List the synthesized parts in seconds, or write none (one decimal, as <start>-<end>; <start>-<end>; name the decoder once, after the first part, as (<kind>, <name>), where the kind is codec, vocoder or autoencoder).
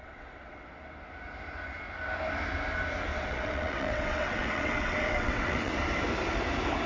0.0-0.7 (vocoder, WaveNeXt); 3.1-5.8